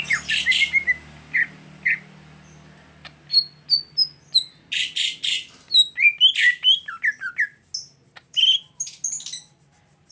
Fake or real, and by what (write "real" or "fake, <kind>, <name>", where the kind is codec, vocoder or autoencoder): real